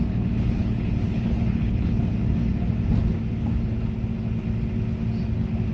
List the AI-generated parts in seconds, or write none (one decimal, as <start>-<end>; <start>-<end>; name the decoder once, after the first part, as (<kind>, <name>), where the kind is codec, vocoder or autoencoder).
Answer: 0.0-2.0 (codec, HILCodec)